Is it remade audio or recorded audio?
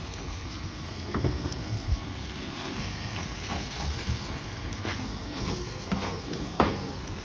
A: remade